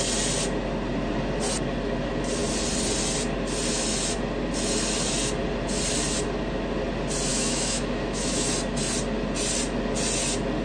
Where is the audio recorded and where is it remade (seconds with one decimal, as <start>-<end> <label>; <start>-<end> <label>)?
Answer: 0.0-7.3 recorded; 7.3-8.5 remade; 8.5-10.6 recorded